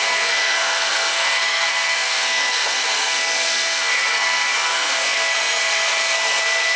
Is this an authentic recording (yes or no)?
no